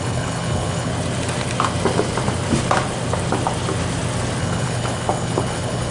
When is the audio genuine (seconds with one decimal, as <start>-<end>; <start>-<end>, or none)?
0.9-4.4